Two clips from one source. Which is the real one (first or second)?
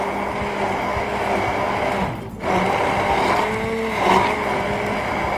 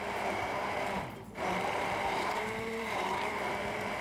first